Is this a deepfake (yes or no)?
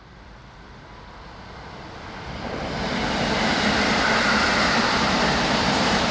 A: no